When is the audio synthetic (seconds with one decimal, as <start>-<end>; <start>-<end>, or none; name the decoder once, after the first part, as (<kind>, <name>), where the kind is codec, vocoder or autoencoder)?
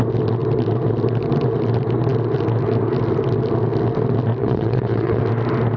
4.4-5.2 (vocoder, WaveNeXt)